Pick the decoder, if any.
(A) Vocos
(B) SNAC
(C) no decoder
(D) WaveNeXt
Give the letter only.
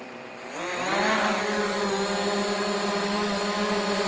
C